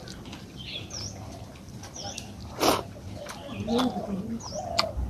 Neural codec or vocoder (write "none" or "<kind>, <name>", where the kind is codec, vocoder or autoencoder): none